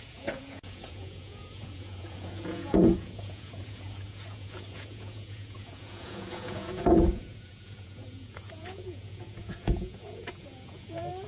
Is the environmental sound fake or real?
fake